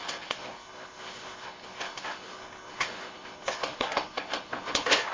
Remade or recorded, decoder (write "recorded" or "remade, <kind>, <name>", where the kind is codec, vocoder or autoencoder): remade, codec, SNAC